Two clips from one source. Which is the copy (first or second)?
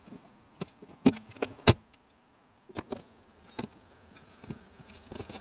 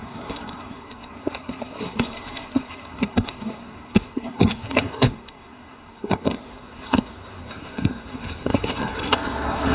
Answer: second